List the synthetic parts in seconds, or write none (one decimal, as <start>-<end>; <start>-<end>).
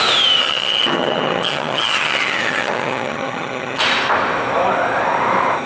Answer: 0.4-3.8